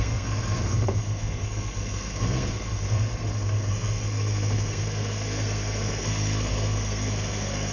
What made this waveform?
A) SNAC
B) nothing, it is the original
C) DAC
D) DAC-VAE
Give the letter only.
A